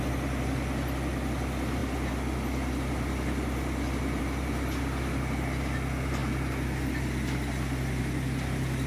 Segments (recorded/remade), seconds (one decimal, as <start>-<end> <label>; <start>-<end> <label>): 0.0-8.9 recorded